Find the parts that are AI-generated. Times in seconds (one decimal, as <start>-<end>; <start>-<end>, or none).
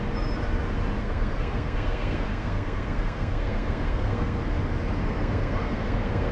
1.0-4.4; 5.0-6.3